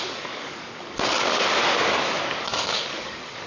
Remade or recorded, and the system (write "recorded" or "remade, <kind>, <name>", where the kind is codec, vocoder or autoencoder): remade, codec, DAC